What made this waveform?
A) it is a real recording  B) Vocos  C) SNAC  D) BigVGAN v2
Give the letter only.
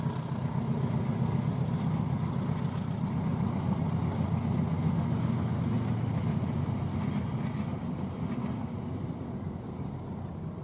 A